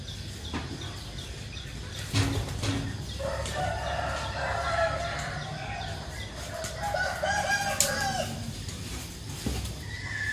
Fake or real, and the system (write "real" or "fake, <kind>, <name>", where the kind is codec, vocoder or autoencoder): real